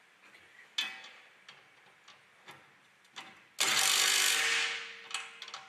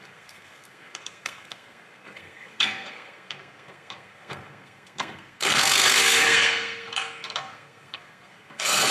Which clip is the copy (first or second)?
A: second